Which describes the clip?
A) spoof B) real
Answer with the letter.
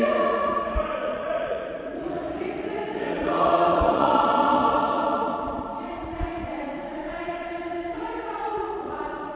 A